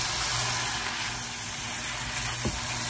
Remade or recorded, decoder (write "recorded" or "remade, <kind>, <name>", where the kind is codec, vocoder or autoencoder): recorded